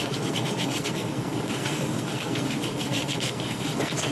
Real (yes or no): no